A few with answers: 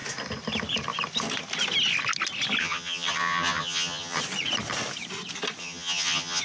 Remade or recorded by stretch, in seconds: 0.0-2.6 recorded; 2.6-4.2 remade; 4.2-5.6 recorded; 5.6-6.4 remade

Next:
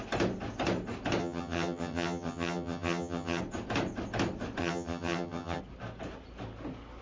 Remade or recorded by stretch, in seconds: 0.0-1.2 recorded; 1.2-3.4 remade; 3.4-4.6 recorded; 4.6-5.6 remade; 5.6-7.0 recorded

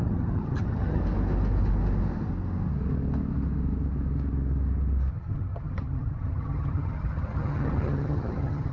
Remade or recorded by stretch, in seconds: 0.0-1.0 remade; 1.0-5.1 recorded; 5.1-8.7 remade

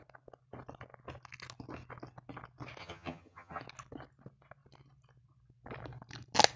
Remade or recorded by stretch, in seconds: 0.0-2.8 recorded; 2.8-3.6 remade; 3.6-6.6 recorded